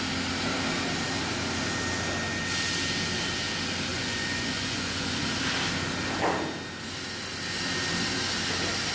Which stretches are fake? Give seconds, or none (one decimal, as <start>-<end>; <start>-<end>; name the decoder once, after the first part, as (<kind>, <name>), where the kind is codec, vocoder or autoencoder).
3.9-5.1 (vocoder, Vocos)